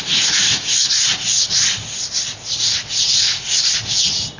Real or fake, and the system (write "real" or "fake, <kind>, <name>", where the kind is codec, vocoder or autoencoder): real